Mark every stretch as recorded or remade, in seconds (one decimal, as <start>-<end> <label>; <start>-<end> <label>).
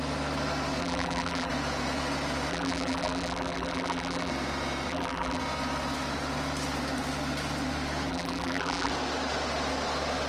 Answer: 0.0-0.8 recorded; 0.8-1.5 remade; 1.5-2.5 recorded; 2.5-4.3 remade; 4.3-4.9 recorded; 4.9-5.4 remade; 5.4-8.1 recorded; 8.1-8.9 remade; 8.9-10.3 recorded